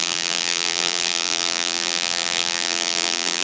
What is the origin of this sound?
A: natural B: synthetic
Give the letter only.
B